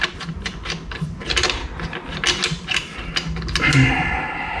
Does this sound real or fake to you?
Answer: real